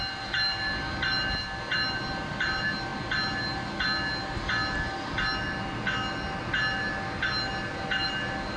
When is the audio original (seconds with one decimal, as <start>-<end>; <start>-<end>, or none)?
0.0-8.6

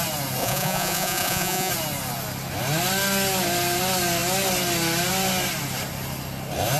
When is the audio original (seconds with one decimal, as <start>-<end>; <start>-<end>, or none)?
0.0-0.4; 1.7-6.8

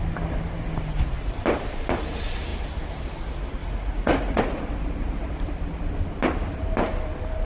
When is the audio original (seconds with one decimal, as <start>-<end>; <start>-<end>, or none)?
0.0-3.6; 4.4-7.5

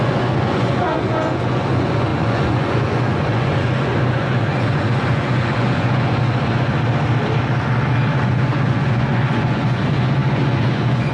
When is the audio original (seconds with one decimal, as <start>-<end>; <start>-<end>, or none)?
6.7-8.1

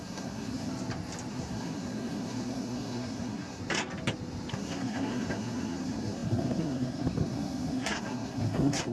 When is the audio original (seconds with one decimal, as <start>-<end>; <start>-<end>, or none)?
0.7-1.3; 3.6-4.5

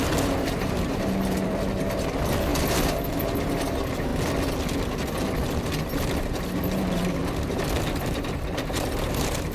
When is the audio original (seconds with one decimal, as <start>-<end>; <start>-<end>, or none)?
4.1-6.2; 7.2-8.0